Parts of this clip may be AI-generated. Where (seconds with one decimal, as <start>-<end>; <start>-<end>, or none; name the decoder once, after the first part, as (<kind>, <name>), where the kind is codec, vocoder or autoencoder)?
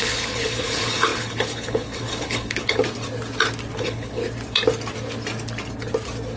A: 0.0-2.8 (codec, HILCodec); 3.8-4.2